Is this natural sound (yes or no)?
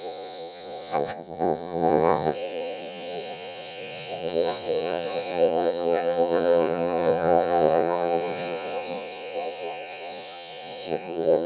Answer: no